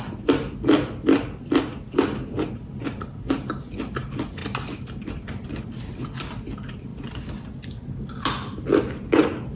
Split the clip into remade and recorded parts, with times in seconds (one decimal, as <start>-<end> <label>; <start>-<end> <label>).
0.0-9.6 recorded